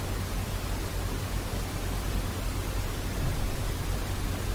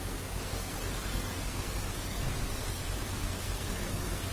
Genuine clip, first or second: first